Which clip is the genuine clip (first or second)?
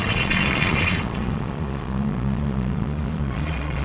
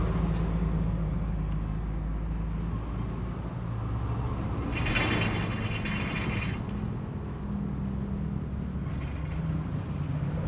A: second